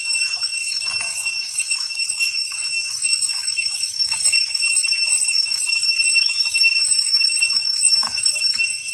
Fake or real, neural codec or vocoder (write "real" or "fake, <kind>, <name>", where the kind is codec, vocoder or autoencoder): fake, autoencoder, DAC-VAE